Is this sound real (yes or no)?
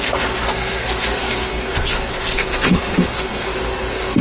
no